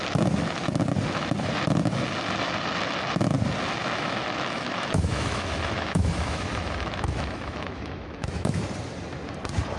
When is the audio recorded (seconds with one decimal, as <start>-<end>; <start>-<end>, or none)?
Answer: 0.0-3.8; 8.6-9.8